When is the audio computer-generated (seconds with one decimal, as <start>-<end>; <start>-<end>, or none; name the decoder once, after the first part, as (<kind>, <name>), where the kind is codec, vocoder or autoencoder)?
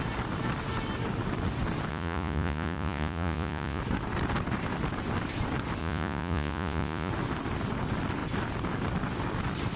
1.9-3.8 (vocoder, Vocos); 5.8-7.1